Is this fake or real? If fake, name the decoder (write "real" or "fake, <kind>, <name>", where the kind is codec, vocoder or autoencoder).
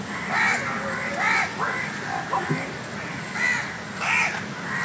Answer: real